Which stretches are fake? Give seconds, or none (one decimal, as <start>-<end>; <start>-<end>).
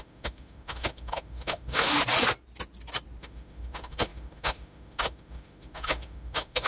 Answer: 0.0-1.9; 3.2-6.7